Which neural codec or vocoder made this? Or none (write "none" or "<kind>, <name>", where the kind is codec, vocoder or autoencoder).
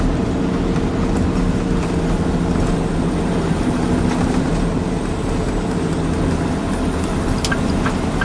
none